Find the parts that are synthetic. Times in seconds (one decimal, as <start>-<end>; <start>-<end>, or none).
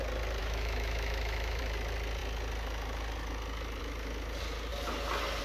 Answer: 0.4-1.6